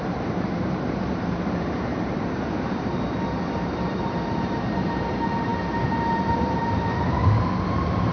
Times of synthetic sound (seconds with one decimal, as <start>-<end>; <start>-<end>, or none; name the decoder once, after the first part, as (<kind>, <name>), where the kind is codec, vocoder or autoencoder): 0.0-2.9 (vocoder, BigVGAN v2); 3.5-8.1